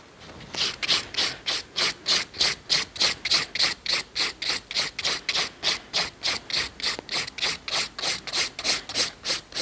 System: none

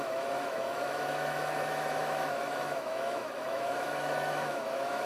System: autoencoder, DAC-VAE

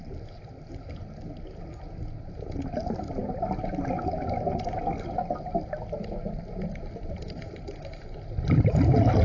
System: none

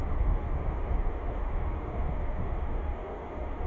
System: autoencoder, DAC-VAE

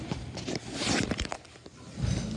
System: none